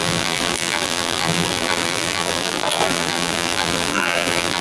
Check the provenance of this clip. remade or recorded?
remade